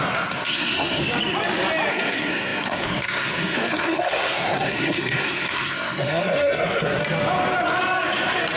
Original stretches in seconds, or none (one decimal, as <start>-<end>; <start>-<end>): 1.0-1.9; 7.0-8.6